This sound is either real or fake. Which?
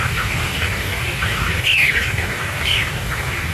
fake